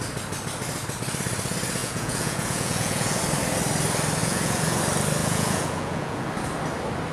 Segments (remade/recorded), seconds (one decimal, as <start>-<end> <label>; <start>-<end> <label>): 0.0-1.8 recorded; 1.8-3.2 remade; 3.2-4.2 recorded; 4.2-4.8 remade; 4.8-5.2 recorded; 5.2-6.3 remade; 6.3-7.1 recorded